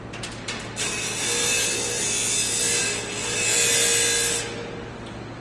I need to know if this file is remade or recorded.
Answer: recorded